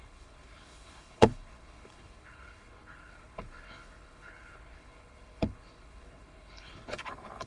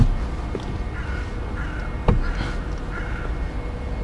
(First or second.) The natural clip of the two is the second